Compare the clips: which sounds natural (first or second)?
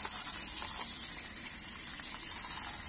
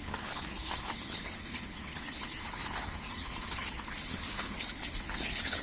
first